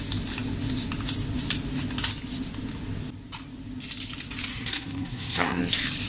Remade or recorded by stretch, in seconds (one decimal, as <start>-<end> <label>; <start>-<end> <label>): 0.0-4.5 recorded; 4.5-5.6 remade; 5.6-6.1 recorded